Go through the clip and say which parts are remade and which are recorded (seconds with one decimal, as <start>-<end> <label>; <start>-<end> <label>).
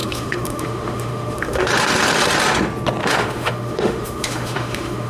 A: 0.0-1.7 remade; 1.7-3.0 recorded; 3.0-5.1 remade